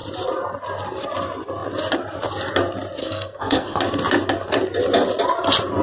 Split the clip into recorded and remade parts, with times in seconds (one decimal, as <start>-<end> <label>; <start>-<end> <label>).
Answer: 0.0-3.0 recorded; 3.0-3.8 remade; 3.8-5.8 recorded